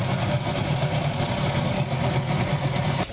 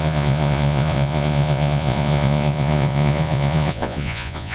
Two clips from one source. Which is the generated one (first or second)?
second